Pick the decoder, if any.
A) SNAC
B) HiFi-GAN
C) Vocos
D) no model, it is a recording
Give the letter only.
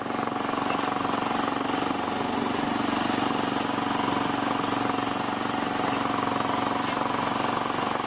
D